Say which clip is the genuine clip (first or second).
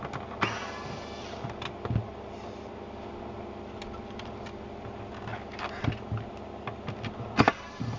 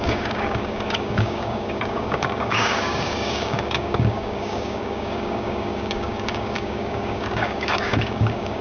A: first